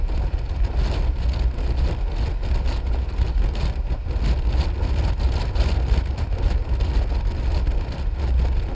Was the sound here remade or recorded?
recorded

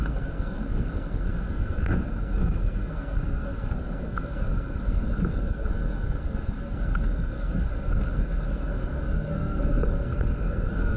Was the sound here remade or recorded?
remade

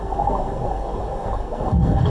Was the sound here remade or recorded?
remade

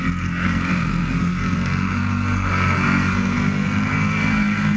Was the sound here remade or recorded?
remade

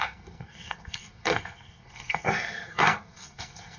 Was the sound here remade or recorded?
remade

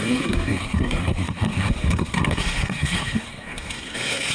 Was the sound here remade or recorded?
remade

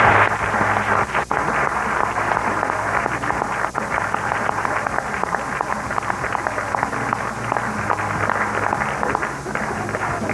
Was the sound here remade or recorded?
recorded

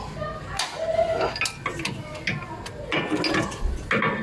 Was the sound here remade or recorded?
recorded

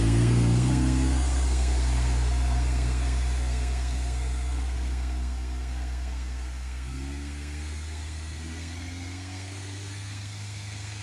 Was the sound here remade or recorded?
remade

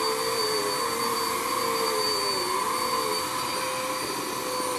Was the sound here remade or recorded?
recorded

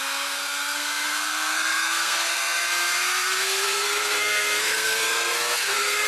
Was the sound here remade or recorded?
remade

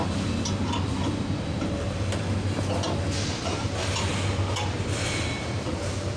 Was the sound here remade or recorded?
recorded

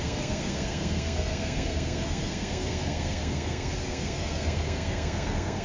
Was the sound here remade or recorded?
remade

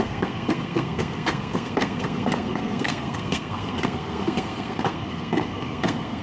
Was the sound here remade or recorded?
remade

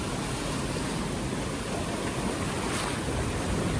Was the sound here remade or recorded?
recorded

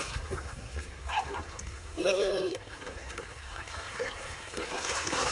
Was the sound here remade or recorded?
remade